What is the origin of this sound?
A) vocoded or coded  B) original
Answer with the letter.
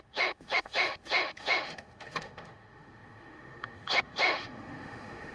A